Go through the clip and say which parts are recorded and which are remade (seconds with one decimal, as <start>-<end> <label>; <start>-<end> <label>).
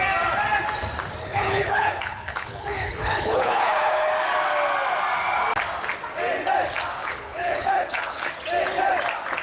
0.0-1.2 recorded; 1.2-4.1 remade; 4.1-7.0 recorded; 7.0-8.3 remade; 8.3-9.4 recorded